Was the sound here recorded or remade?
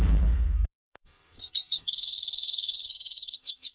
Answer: remade